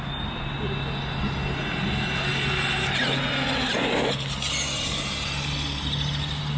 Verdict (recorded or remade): recorded